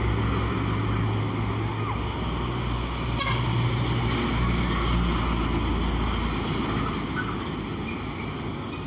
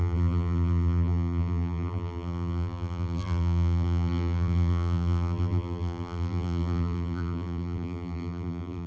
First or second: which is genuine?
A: first